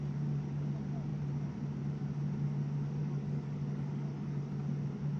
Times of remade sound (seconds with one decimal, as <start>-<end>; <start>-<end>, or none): 3.0-4.6